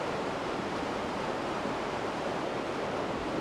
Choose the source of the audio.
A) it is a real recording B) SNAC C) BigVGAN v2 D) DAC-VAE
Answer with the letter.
C